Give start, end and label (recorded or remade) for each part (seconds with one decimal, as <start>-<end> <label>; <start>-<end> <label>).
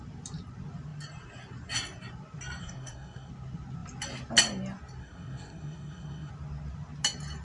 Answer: 0.0-2.6 recorded; 2.6-3.3 remade; 3.3-5.0 recorded; 5.0-6.3 remade; 6.3-7.4 recorded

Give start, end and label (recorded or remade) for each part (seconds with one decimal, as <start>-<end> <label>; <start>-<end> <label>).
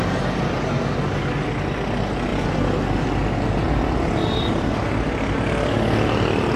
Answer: 0.0-6.6 recorded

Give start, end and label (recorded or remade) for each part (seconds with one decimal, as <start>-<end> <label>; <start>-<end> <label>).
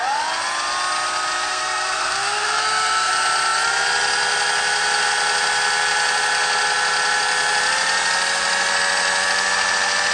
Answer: 0.0-1.5 recorded; 1.5-3.1 remade; 3.1-10.1 recorded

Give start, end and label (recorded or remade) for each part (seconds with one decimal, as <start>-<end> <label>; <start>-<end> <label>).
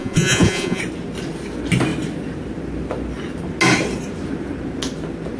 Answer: 0.0-0.8 remade; 0.8-5.4 recorded